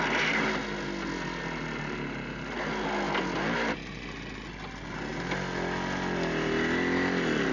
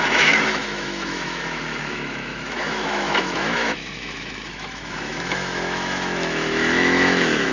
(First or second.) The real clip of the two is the first